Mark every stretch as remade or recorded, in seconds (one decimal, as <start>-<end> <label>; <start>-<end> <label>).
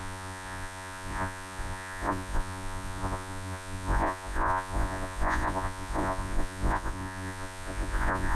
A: 0.0-8.3 remade